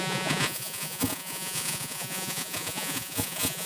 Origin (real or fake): fake